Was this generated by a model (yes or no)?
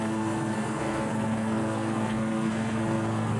yes